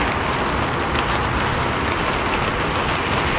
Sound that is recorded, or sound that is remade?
recorded